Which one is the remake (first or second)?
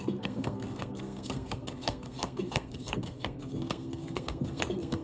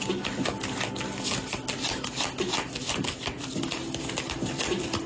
first